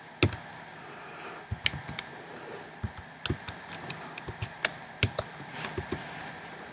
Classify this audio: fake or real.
real